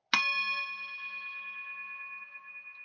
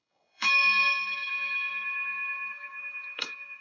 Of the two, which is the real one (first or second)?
first